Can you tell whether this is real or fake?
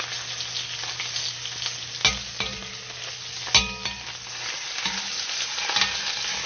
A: real